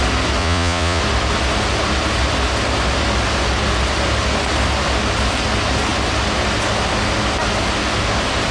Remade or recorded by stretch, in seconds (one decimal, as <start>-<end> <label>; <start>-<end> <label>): 0.0-0.4 recorded; 0.4-1.0 remade; 1.0-8.5 recorded